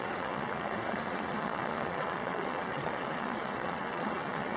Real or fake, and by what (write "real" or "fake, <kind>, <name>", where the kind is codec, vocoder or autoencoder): fake, vocoder, Vocos